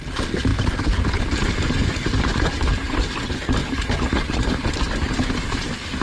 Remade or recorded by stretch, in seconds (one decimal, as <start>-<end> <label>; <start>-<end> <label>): 0.0-0.5 recorded; 0.5-1.2 remade; 1.2-2.3 recorded; 2.3-3.0 remade; 3.0-3.6 recorded; 3.6-5.6 remade; 5.6-6.0 recorded

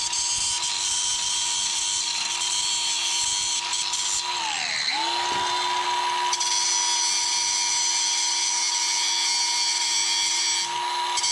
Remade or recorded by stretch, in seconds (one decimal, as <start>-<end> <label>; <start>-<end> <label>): 0.0-11.3 recorded

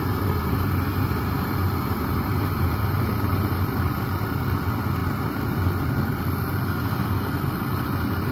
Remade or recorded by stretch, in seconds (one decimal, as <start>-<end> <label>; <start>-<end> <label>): 0.0-0.9 recorded; 0.9-4.3 remade; 4.3-8.3 recorded

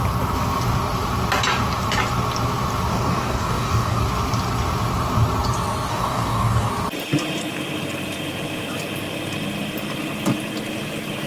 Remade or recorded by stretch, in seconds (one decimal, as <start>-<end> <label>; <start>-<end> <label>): 0.0-2.9 recorded; 2.9-4.0 remade; 4.0-5.9 recorded; 5.9-6.7 remade; 6.7-11.3 recorded

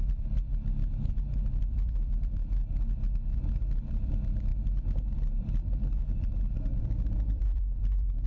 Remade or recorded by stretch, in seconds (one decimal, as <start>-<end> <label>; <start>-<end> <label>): 0.0-8.3 remade

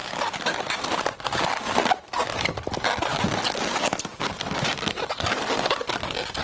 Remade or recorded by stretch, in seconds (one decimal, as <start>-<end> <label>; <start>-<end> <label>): 0.0-6.4 recorded